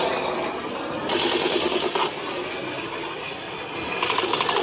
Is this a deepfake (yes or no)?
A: no